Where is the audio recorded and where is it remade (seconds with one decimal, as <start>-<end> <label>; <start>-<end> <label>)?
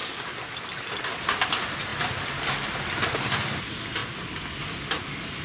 0.0-0.6 remade; 0.6-1.9 recorded; 1.9-3.6 remade; 3.6-5.4 recorded